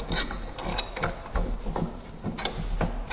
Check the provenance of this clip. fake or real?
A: real